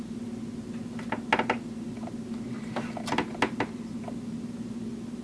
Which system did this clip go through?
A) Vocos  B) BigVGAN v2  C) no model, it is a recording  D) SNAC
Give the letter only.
C